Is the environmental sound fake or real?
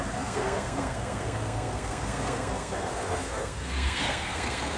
fake